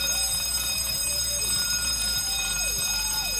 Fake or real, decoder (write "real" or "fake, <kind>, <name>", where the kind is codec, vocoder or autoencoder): fake, vocoder, BigVGAN v2